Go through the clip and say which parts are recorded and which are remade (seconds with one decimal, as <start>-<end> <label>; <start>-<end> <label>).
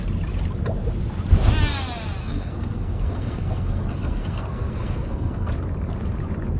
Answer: 0.0-2.2 recorded; 2.2-5.5 remade; 5.5-6.6 recorded